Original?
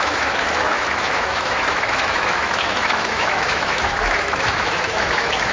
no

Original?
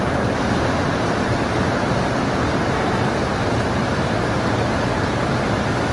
no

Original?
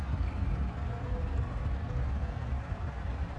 yes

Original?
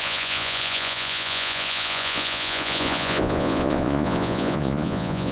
no